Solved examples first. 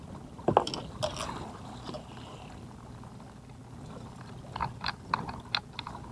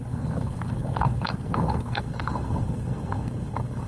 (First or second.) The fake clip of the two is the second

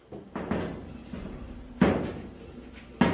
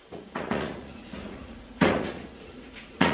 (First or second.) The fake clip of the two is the second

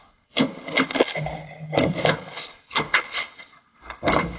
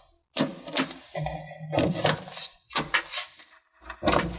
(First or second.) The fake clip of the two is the first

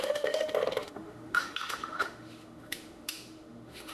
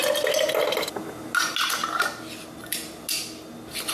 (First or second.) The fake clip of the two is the first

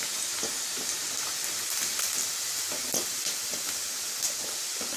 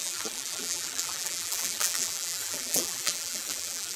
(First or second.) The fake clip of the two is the second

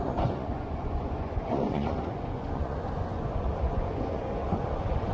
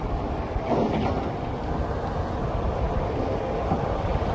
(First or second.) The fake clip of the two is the first